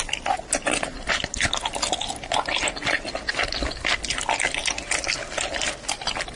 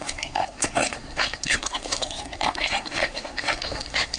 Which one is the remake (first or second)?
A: second